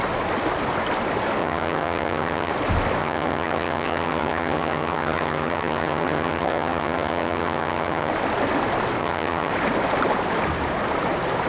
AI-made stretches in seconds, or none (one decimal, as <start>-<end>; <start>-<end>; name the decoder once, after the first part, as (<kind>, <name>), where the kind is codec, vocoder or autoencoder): 1.4-2.5 (vocoder, HiFi-GAN); 3.0-8.1; 9.0-9.5